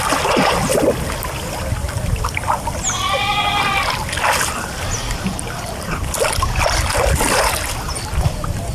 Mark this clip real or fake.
real